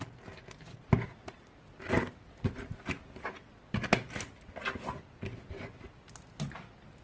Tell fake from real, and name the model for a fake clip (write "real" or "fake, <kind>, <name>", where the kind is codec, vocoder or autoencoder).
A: real